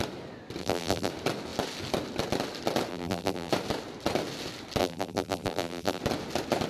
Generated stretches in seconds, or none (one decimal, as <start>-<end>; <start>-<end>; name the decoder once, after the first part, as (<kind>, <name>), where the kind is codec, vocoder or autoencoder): 0.6-1.1 (vocoder, BigVGAN v2); 2.9-3.5; 4.8-6.0

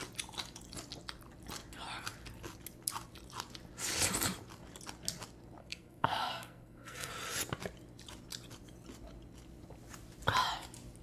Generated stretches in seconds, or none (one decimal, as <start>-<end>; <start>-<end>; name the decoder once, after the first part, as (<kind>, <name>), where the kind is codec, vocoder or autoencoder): 5.6-7.1 (codec, SNAC)

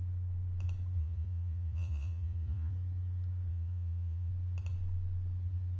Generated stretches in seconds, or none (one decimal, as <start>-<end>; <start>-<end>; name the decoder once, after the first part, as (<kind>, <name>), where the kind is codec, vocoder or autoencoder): 1.0-2.7 (vocoder, Vocos); 3.5-4.3

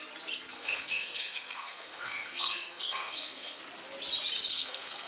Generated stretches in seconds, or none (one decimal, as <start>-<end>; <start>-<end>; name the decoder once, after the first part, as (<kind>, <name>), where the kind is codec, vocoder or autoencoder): 0.5-3.6 (codec, SNAC); 4.5-5.1